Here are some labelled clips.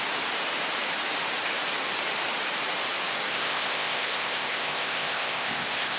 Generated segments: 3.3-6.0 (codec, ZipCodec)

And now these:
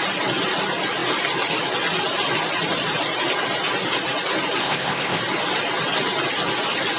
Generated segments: 4.6-5.2 (codec, ZipCodec)